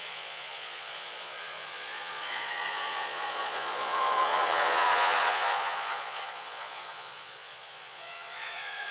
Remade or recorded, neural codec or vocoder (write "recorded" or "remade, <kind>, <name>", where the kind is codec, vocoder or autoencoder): remade, vocoder, Vocos